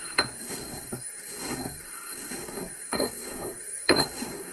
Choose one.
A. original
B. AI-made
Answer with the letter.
B